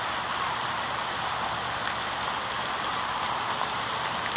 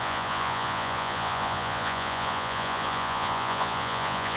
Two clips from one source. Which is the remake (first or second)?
second